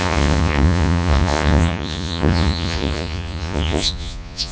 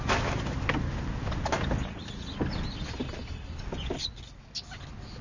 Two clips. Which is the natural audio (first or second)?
second